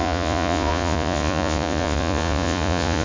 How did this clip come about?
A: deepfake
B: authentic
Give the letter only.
A